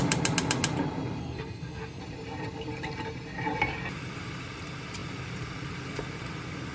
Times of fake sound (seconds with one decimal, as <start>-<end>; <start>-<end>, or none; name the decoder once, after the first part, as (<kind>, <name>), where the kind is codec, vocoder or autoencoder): 1.2-2.0 (codec, SNAC)